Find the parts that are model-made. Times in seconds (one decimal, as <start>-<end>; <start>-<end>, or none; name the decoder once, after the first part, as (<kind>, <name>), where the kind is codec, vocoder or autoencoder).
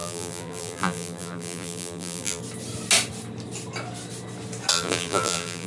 0.0-2.4 (vocoder, BigVGAN v2); 4.7-5.7